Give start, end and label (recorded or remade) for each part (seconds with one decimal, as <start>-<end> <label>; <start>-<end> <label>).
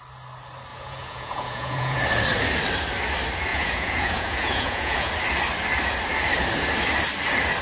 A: 0.0-0.7 recorded; 0.7-2.0 remade; 2.0-3.5 recorded; 3.5-5.1 remade; 5.1-7.6 recorded